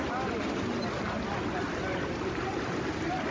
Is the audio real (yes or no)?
yes